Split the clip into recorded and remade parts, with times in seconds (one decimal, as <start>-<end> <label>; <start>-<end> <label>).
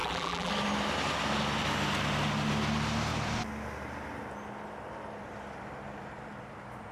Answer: 0.0-0.5 remade; 0.5-6.9 recorded